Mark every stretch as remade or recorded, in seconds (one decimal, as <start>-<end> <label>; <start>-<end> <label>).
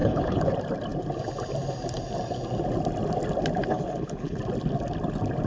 0.0-0.5 remade; 0.5-3.7 recorded; 3.7-4.4 remade; 4.4-5.5 recorded